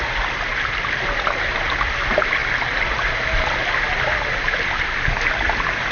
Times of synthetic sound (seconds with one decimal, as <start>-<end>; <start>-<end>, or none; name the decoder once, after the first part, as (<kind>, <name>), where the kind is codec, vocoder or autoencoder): none